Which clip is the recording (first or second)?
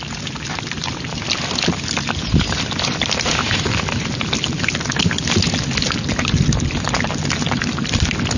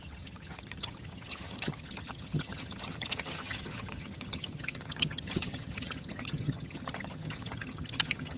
first